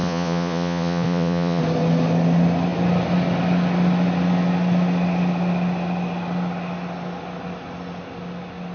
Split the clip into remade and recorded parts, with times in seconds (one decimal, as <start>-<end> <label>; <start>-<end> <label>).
0.0-1.6 remade; 1.6-8.7 recorded